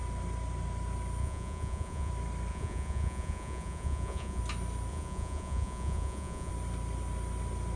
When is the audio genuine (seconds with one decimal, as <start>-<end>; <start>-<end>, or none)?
0.0-1.2; 2.1-2.5; 4.4-4.9; 6.5-7.8